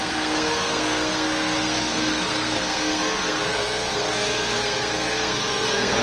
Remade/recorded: remade